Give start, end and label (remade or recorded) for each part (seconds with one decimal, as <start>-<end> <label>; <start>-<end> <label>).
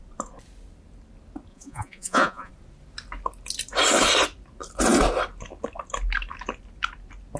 0.0-1.5 recorded; 1.5-2.5 remade; 2.5-7.4 recorded